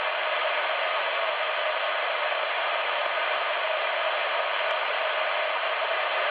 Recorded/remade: recorded